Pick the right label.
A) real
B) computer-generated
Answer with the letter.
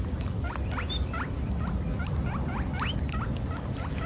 A